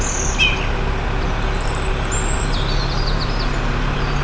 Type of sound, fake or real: real